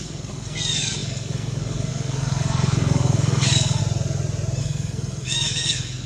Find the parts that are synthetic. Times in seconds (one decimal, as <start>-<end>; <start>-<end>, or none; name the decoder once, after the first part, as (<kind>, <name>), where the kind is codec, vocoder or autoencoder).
0.0-3.8 (codec, SNAC); 4.6-6.1